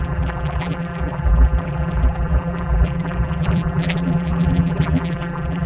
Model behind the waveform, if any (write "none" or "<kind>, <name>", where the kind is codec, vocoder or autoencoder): vocoder, BigVGAN v2